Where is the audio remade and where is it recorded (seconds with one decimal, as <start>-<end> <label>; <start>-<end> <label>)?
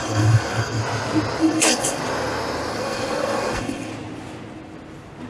0.0-0.8 remade; 0.8-1.4 recorded; 1.4-2.0 remade; 2.0-2.7 recorded; 2.7-3.9 remade; 3.9-5.3 recorded